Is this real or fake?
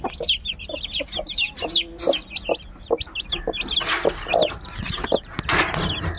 real